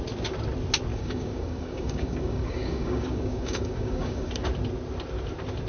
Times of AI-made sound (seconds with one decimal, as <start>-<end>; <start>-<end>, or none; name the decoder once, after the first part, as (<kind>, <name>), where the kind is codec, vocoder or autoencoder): 0.9-4.3 (codec, DAC)